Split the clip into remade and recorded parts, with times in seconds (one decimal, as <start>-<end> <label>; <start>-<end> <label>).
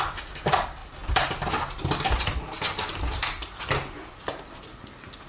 0.0-5.3 recorded